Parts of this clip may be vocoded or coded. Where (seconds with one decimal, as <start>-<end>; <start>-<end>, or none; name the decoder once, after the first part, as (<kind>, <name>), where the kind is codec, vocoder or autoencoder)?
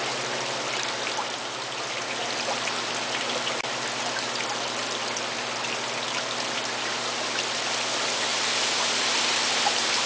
none